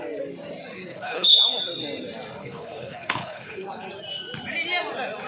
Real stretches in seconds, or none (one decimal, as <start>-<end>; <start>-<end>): 0.0-0.9; 1.4-2.4; 3.7-5.3